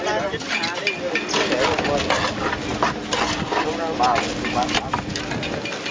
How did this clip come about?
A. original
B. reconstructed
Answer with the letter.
A